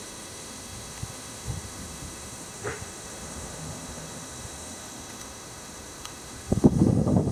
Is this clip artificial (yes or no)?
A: yes